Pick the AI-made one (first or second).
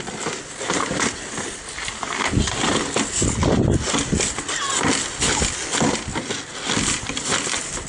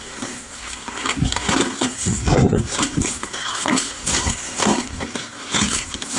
second